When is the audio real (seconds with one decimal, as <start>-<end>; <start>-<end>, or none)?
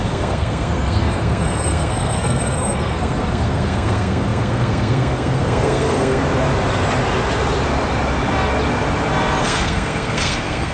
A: 6.2-9.4